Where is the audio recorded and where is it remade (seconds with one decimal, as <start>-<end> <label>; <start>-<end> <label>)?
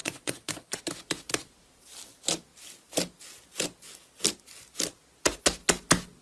0.0-0.8 remade; 0.8-6.2 recorded